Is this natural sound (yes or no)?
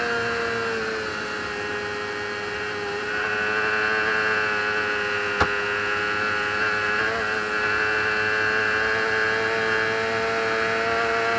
yes